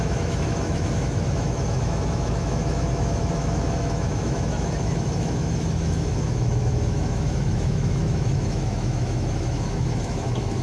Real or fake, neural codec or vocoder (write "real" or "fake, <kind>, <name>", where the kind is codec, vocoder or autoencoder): fake, autoencoder, DAC-VAE